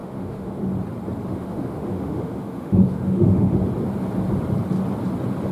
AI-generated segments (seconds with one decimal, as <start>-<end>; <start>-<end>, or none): 0.0-0.6; 1.3-3.6